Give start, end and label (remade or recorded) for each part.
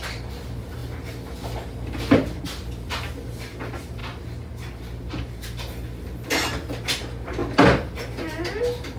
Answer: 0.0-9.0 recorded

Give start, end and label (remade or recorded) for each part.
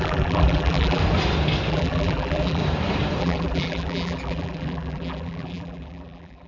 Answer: 0.0-1.0 remade; 1.0-1.7 recorded; 1.7-2.6 remade; 2.6-3.2 recorded; 3.2-6.5 remade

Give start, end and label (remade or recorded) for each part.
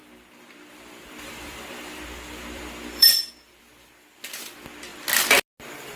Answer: 0.0-3.6 remade; 3.6-6.0 recorded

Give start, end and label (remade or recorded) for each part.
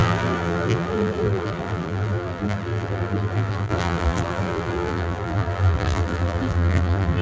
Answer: 0.0-7.2 remade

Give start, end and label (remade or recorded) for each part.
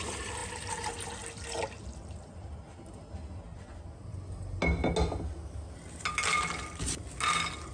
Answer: 0.0-7.7 recorded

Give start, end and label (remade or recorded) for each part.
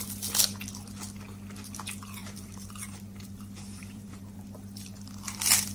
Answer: 0.0-2.2 recorded; 2.2-4.9 remade; 4.9-5.7 recorded